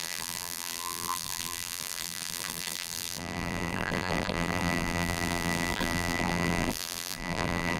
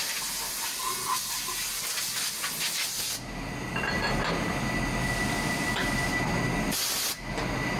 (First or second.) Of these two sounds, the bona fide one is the second